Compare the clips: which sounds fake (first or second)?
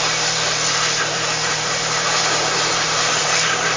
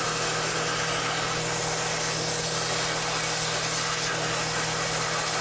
first